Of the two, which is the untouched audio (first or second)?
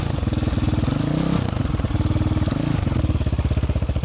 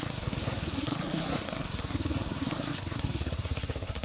first